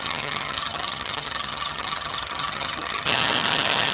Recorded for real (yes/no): no